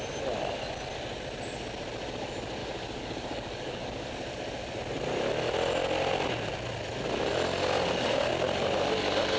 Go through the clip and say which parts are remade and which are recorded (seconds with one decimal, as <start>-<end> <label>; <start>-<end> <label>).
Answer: 0.0-2.6 recorded; 2.6-4.1 remade; 4.1-9.4 recorded